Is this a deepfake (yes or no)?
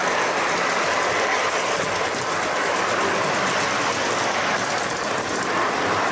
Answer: no